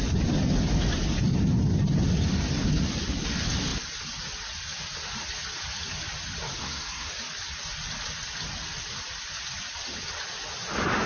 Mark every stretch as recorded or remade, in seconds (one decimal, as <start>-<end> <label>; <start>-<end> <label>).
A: 0.0-6.6 recorded; 6.6-7.1 remade; 7.1-11.1 recorded